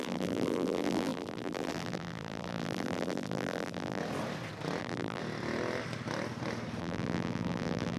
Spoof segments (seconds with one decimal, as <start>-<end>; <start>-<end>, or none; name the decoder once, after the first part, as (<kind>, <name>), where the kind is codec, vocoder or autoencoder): 0.0-4.0 (vocoder, BigVGAN v2); 4.8-5.2; 6.8-8.0

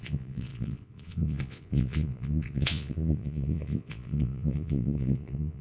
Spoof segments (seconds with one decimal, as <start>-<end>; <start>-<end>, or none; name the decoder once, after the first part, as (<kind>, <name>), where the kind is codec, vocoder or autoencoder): 0.0-5.6 (vocoder, Vocos)

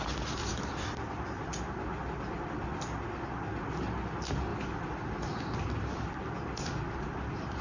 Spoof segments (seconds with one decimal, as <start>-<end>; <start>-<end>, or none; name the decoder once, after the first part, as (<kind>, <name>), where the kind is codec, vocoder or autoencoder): 0.4-1.6 (vocoder, BigVGAN v2); 4.5-6.1

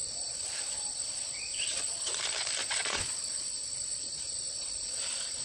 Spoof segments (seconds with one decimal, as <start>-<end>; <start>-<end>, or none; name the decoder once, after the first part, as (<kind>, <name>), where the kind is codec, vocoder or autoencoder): 0.0-2.2 (vocoder, Vocos); 2.6-5.4

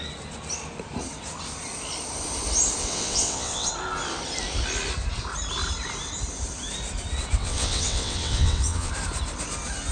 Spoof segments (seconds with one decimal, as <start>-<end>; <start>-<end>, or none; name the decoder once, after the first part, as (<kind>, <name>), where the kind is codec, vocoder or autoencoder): 2.8-3.7 (vocoder, WaveNeXt); 7.4-8.9

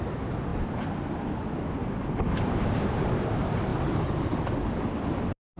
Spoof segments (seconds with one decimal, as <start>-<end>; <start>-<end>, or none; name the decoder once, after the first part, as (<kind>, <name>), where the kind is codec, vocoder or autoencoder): 0.5-1.1 (vocoder, BigVGAN v2); 1.8-2.6; 3.7-4.5

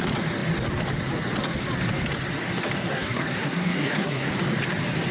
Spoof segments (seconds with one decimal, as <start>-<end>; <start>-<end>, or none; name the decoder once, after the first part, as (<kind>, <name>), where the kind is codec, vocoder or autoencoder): 2.9-4.3 (codec, SNAC)